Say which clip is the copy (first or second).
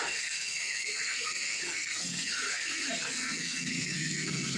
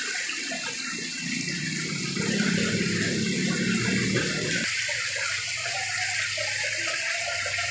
first